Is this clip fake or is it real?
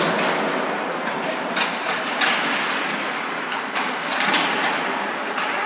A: real